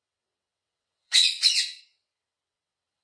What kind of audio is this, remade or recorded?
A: remade